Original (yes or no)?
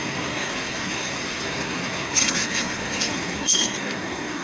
no